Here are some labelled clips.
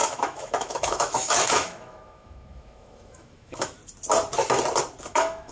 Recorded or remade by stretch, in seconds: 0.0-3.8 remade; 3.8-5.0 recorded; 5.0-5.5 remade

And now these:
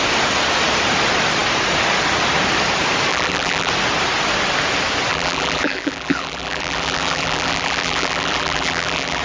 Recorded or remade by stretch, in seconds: 0.0-3.1 recorded; 3.1-3.7 remade; 3.7-5.1 recorded; 5.1-9.2 remade

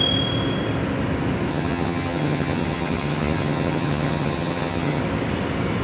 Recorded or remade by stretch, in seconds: 0.0-1.5 recorded; 1.5-5.0 remade; 5.0-5.8 recorded

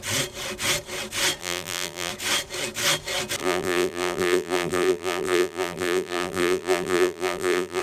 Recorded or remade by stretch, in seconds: 0.0-1.4 recorded; 1.4-2.1 remade; 2.1-3.4 recorded; 3.4-7.8 remade